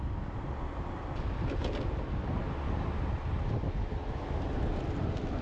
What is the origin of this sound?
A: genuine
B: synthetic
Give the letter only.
A